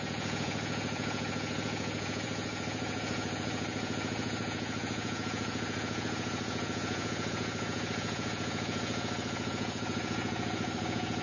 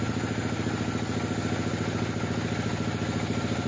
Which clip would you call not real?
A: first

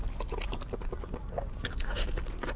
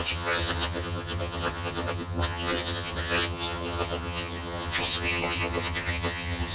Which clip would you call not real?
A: second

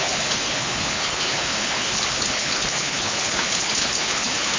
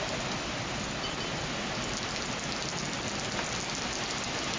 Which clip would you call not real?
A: first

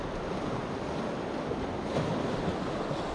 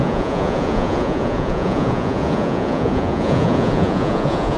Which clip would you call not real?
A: second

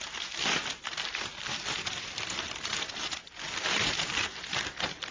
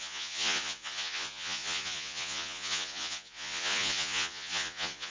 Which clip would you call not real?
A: second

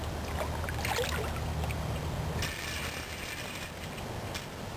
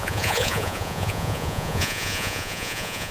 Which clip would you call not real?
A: second